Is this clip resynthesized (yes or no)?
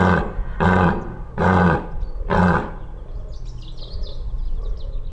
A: no